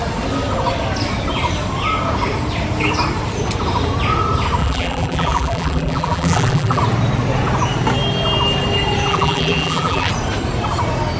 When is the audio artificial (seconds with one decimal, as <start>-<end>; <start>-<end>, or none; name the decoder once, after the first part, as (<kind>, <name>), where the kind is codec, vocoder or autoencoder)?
4.6-6.8 (vocoder, BigVGAN v2); 9.1-10.1